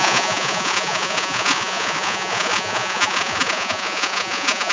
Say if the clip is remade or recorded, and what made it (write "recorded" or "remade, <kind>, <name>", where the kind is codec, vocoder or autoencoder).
remade, vocoder, Vocos